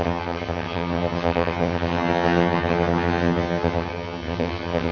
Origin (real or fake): fake